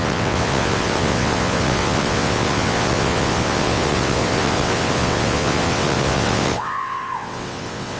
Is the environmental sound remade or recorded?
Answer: remade